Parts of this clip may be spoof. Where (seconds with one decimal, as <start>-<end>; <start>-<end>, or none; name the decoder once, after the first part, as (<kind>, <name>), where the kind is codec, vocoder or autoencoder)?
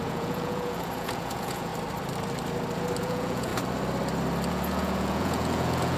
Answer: 0.0-1.7 (vocoder, Vocos); 3.0-3.5; 4.5-6.0